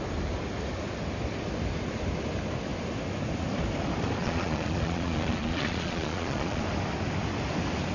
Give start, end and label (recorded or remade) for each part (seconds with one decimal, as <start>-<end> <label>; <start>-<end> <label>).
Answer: 0.0-4.2 recorded; 4.2-6.6 remade; 6.6-7.9 recorded